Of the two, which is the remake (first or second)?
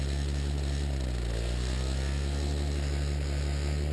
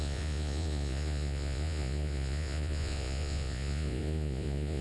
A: second